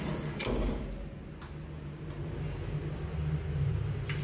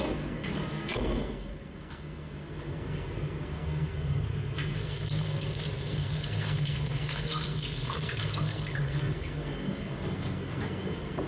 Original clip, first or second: first